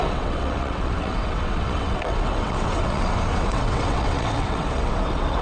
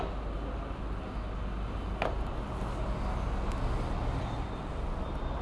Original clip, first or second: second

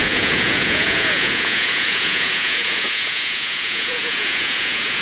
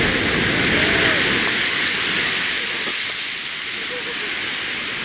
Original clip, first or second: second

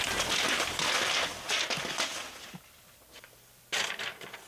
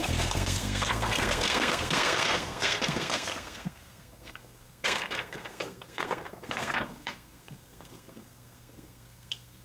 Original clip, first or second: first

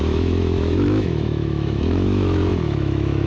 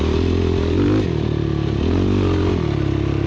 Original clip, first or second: second